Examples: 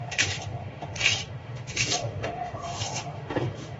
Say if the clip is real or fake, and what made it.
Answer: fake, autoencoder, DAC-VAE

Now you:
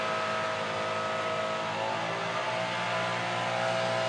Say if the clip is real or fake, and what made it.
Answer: real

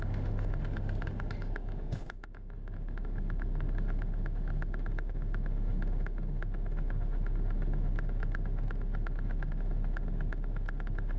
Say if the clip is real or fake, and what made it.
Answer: fake, autoencoder, DAC-VAE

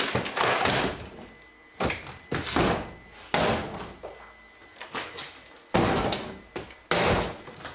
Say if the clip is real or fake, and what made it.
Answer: real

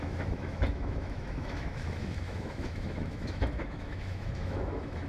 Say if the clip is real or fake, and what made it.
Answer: fake, autoencoder, DAC-VAE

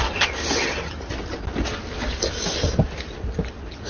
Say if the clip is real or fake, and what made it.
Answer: real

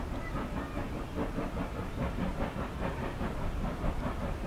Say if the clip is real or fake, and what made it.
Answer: real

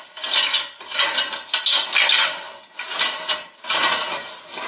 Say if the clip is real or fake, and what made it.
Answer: real